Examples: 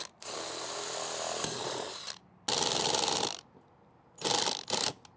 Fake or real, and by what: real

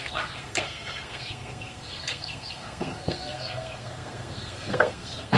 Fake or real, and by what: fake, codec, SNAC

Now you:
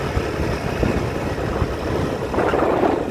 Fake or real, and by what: real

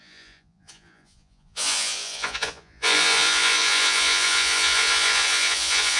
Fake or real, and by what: fake, vocoder, Vocos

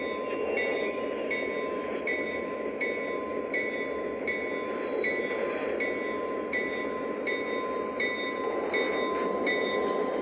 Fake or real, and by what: real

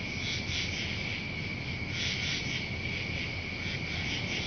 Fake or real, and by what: real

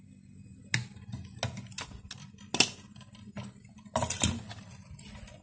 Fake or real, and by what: real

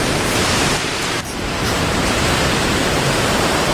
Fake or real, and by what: fake, vocoder, BigVGAN v2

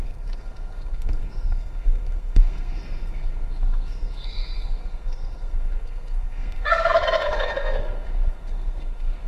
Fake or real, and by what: fake, codec, SNAC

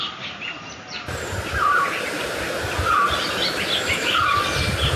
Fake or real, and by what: real